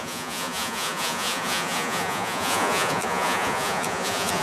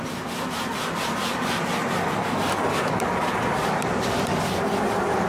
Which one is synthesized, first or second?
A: first